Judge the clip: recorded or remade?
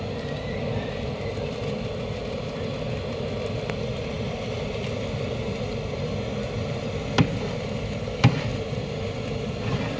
remade